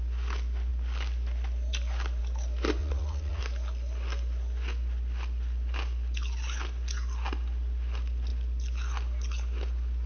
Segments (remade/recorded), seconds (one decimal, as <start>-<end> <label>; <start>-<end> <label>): 0.0-2.8 recorded; 2.8-3.4 remade; 3.4-10.1 recorded